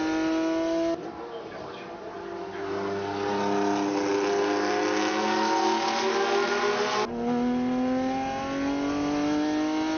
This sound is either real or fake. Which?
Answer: real